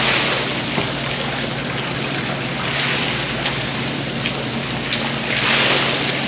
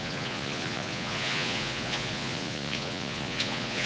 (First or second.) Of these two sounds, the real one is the first